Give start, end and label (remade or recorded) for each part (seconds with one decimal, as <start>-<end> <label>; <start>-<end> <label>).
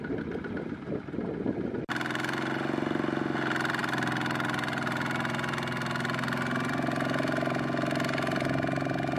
0.0-9.2 recorded